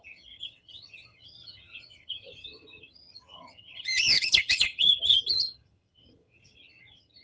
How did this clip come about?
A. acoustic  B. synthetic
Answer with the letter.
B